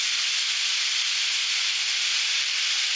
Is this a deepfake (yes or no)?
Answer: no